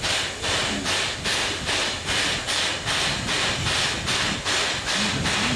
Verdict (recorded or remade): recorded